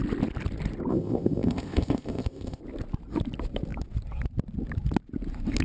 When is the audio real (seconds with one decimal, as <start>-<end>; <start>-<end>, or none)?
0.0-0.9; 2.6-5.6